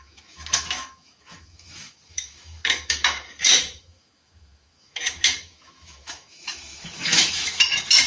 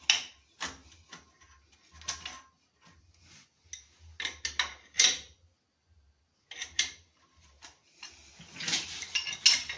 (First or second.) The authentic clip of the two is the second